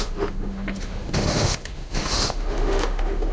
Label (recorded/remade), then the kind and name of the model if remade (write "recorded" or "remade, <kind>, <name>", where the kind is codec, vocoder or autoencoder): remade, autoencoder, DAC-VAE